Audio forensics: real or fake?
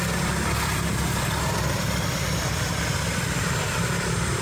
fake